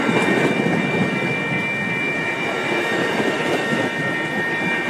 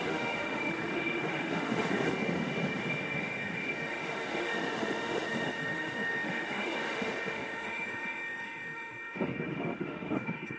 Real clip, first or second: first